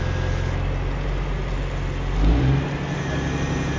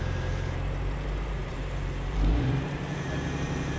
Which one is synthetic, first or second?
second